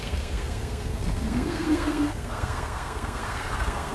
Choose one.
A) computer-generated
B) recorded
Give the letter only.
A